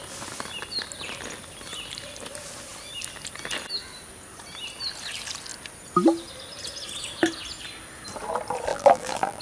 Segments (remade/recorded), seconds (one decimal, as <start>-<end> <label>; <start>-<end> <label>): 0.0-8.7 recorded; 8.7-9.4 remade